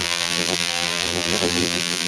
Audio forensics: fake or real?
fake